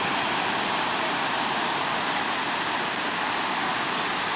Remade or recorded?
recorded